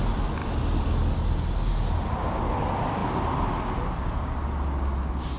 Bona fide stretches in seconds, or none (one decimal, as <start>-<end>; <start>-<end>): 0.0-5.4